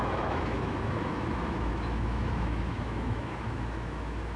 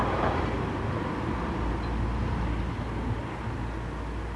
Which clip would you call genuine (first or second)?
second